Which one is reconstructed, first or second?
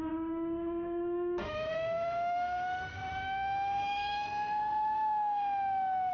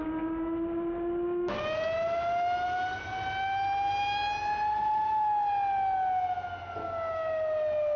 first